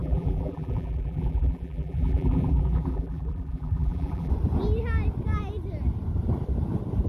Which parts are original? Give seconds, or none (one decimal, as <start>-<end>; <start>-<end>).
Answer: 4.3-7.1